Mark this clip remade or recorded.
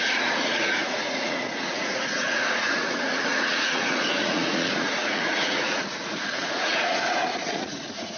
remade